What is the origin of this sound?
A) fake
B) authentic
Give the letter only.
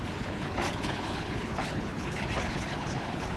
A